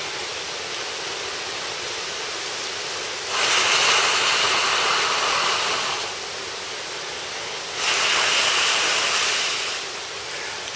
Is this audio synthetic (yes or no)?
no